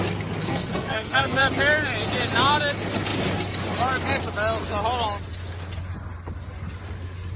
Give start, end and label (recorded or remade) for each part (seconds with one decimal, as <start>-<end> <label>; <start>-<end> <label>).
0.0-0.4 recorded; 0.4-1.4 remade; 1.4-7.4 recorded

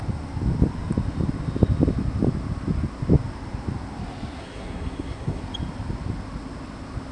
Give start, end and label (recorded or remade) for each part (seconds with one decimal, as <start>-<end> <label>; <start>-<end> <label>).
0.0-4.4 recorded; 4.4-5.4 remade; 5.4-7.1 recorded

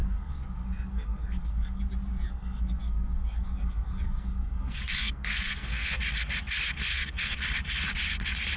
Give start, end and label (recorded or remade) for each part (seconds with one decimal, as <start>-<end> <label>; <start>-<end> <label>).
0.0-1.8 remade; 1.8-2.3 recorded; 2.3-6.0 remade; 6.0-6.9 recorded; 6.9-7.4 remade; 7.4-8.6 recorded

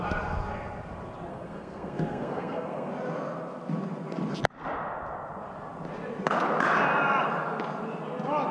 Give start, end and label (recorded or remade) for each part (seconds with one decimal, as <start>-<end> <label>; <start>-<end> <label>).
0.0-1.3 recorded; 1.3-2.9 remade; 2.9-8.5 recorded

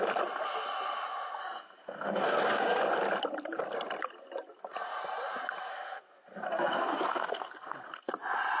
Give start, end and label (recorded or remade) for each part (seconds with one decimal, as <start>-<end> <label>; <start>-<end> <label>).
0.0-1.4 recorded; 1.4-2.8 remade; 2.8-5.7 recorded; 5.7-8.1 remade; 8.1-8.6 recorded

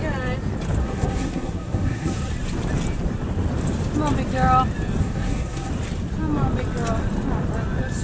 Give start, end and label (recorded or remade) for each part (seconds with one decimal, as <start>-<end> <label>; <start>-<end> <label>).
0.0-0.8 recorded; 0.8-2.3 remade; 2.3-5.0 recorded; 5.0-5.7 remade; 5.7-8.0 recorded